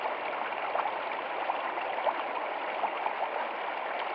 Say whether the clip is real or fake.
real